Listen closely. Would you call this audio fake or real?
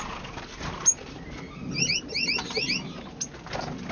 real